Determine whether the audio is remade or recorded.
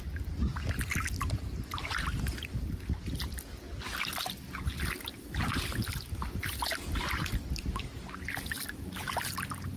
recorded